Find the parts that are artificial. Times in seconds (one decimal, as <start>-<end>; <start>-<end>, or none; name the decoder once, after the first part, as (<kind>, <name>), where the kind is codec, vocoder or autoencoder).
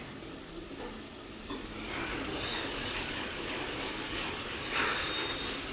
1.7-5.1 (codec, DAC)